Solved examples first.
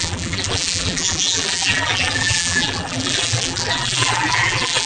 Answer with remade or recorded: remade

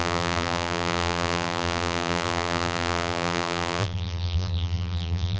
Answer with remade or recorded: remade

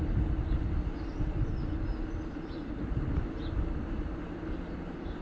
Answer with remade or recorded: remade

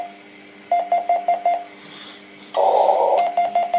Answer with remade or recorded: recorded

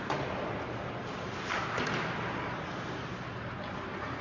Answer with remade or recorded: recorded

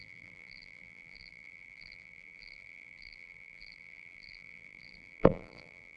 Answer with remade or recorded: remade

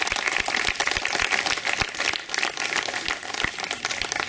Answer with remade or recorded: recorded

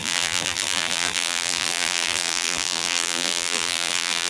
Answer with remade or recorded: remade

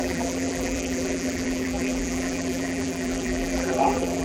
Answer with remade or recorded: remade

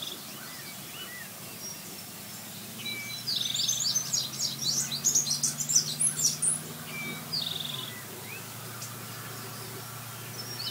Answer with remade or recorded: recorded